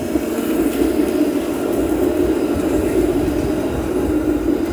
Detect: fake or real real